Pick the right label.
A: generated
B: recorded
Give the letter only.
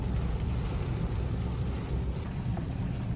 B